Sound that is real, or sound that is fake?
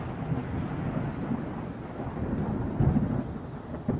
real